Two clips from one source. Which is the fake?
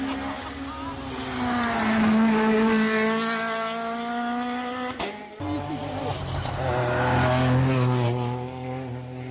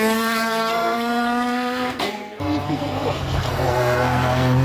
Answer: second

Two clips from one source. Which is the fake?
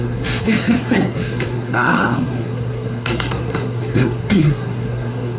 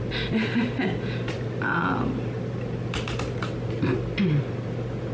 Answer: first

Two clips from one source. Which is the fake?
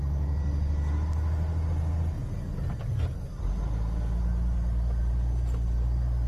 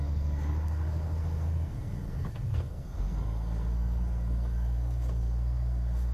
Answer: second